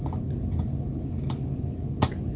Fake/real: real